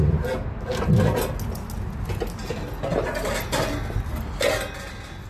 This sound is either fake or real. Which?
real